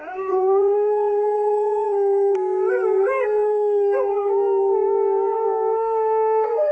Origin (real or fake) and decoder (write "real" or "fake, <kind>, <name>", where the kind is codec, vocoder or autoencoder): fake, codec, SNAC